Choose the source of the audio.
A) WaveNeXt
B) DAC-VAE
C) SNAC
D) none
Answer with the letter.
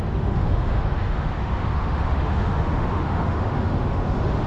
B